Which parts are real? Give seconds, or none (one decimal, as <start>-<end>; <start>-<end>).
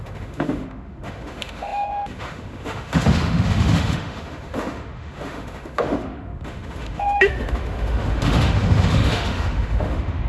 none